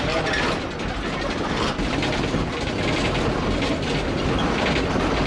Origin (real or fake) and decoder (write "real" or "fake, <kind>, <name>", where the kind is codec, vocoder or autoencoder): real